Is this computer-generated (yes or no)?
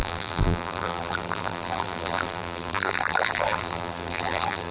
yes